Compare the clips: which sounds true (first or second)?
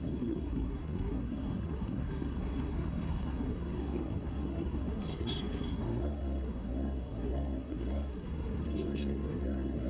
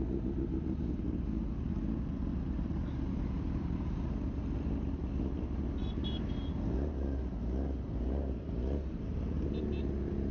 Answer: second